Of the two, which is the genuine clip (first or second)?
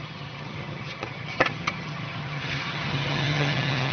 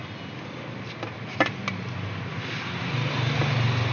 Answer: second